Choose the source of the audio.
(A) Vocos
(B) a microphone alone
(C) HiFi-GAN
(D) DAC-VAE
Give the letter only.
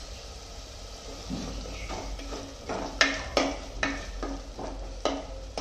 B